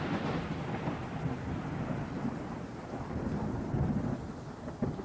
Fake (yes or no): no